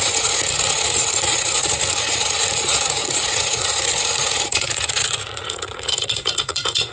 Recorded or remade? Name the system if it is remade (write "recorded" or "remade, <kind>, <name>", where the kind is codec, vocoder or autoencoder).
remade, vocoder, Vocos